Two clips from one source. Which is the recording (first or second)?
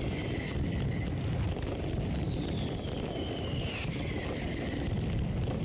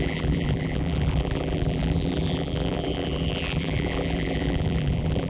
first